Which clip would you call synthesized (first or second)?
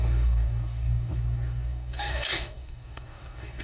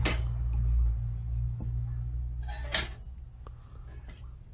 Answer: first